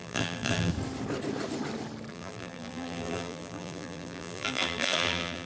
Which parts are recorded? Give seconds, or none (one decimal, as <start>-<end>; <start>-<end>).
0.7-2.1